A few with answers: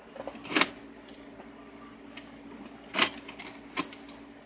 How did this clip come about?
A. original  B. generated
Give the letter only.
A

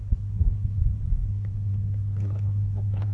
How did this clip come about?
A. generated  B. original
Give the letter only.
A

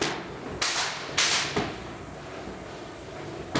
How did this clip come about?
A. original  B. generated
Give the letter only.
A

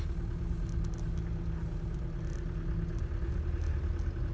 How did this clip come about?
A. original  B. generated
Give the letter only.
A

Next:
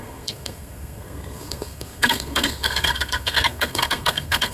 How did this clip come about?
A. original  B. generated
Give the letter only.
B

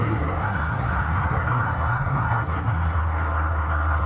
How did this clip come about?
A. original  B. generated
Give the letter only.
B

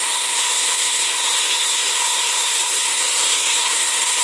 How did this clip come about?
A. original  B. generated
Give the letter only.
B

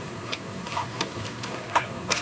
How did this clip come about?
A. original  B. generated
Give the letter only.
B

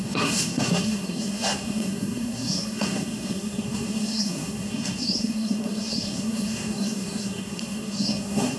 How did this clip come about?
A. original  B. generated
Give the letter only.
B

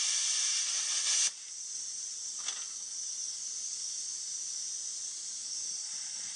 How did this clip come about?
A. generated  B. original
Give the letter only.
B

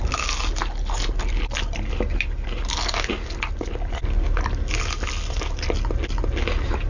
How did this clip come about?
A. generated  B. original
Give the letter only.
B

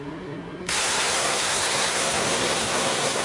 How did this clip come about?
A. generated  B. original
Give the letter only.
A